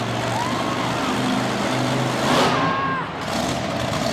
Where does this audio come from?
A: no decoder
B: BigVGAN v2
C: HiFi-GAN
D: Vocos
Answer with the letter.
A